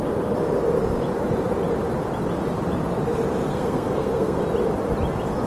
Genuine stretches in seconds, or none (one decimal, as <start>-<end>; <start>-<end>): 0.0-3.5; 4.4-5.5